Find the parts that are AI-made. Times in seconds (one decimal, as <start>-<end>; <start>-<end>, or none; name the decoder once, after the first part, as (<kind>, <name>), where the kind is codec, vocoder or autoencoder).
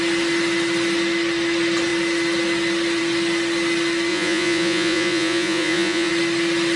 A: 4.1-6.1 (vocoder, Vocos)